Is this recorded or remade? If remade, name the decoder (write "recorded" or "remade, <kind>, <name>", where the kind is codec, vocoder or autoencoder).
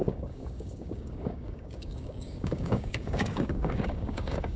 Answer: remade, codec, DAC